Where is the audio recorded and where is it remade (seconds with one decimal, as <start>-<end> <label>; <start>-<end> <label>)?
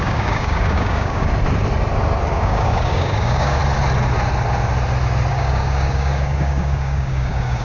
0.0-1.3 remade; 1.3-2.3 recorded; 2.3-3.6 remade; 3.6-5.3 recorded; 5.3-7.6 remade